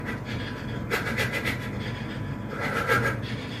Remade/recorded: recorded